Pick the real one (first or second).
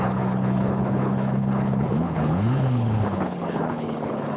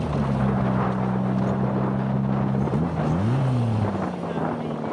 second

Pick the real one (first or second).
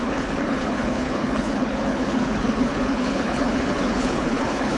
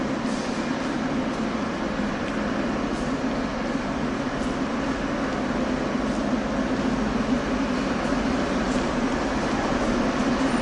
second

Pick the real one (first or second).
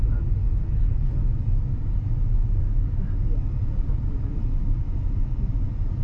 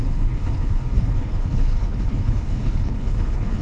first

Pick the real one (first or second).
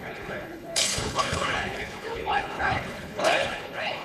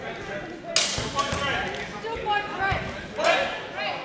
second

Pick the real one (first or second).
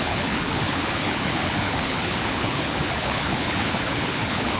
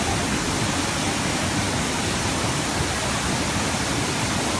second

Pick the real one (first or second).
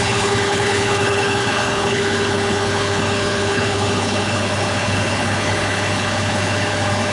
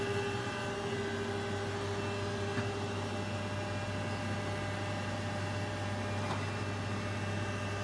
second